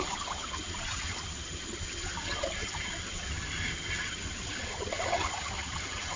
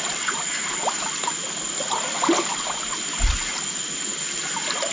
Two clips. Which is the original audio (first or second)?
second